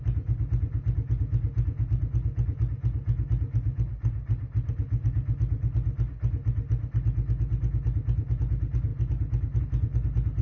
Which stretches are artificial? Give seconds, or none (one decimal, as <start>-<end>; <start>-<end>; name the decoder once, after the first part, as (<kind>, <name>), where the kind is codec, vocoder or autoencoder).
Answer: none